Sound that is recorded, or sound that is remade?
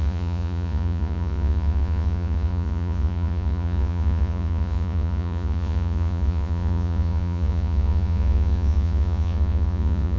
remade